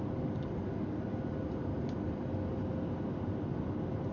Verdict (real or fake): real